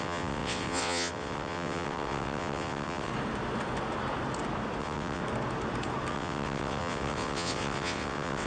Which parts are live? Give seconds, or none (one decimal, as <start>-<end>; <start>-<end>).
3.1-4.8; 5.2-6.1